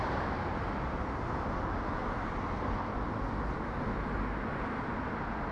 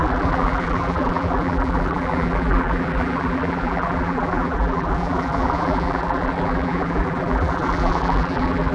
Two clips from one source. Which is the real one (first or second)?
first